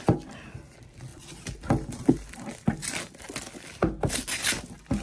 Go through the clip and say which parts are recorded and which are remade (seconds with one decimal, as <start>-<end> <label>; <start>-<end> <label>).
0.0-5.0 recorded